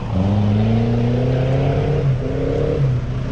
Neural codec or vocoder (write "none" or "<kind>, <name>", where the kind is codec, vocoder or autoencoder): none